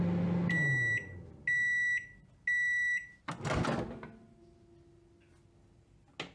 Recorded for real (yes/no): yes